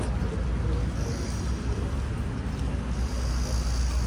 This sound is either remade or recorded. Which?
recorded